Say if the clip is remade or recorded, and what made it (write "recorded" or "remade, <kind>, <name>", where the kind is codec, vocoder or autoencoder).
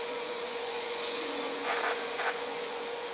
remade, vocoder, Vocos